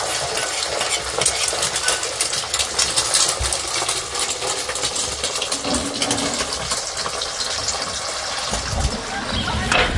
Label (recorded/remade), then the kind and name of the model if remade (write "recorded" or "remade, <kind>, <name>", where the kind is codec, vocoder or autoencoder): recorded